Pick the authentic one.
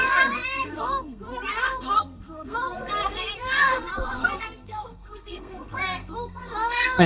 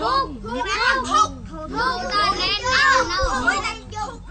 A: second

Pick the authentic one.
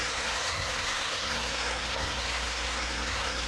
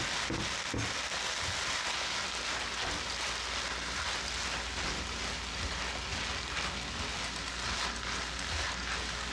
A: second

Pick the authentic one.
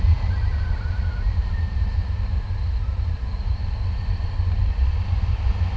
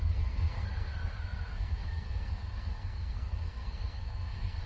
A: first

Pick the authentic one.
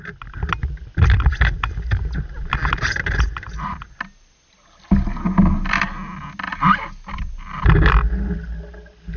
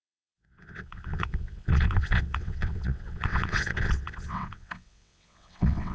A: first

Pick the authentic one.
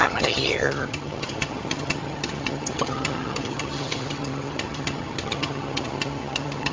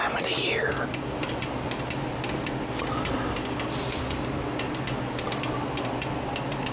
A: second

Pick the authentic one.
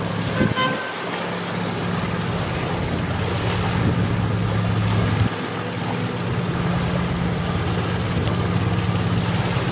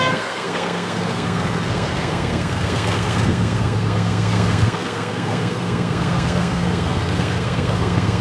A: first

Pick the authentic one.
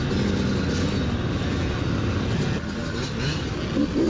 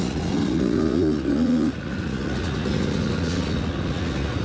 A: first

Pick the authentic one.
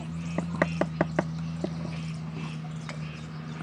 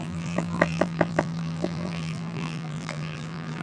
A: first